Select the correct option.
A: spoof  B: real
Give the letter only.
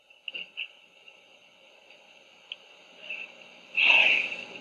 B